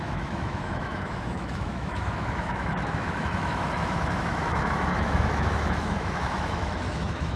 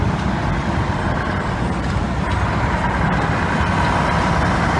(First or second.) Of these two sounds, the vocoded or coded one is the first